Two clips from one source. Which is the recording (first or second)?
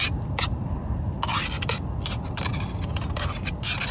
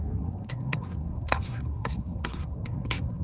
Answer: first